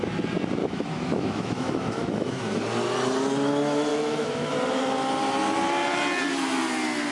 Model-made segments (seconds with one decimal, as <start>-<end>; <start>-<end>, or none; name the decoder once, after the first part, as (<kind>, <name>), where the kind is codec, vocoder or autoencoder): 0.6-2.4 (autoencoder, DAC-VAE); 3.9-4.5